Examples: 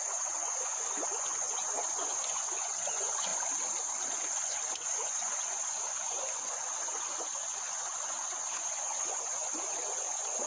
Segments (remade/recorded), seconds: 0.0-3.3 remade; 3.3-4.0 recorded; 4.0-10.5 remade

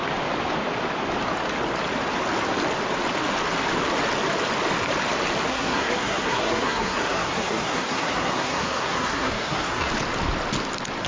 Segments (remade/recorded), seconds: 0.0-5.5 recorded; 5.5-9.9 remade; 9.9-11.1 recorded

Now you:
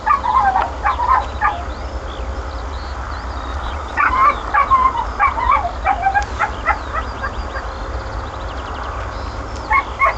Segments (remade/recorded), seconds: 0.0-3.5 recorded; 3.5-4.1 remade; 4.1-10.2 recorded

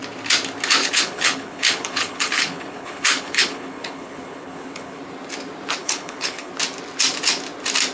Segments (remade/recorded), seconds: 0.0-0.8 recorded; 0.8-5.0 remade; 5.0-5.8 recorded; 5.8-6.5 remade; 6.5-7.9 recorded

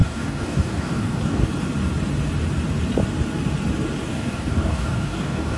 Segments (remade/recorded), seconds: 0.0-1.4 remade; 1.4-4.1 recorded; 4.1-5.6 remade

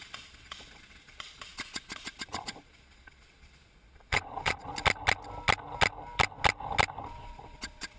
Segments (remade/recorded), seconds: 0.0-4.7 remade; 4.7-7.0 recorded; 7.0-8.0 remade